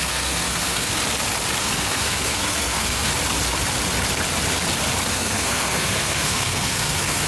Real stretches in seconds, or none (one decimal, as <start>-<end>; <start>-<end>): 1.0-1.6; 3.1-5.1